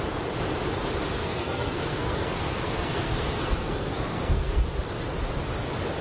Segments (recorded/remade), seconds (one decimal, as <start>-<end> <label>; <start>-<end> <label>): 0.0-1.2 recorded; 1.2-4.8 remade; 4.8-6.0 recorded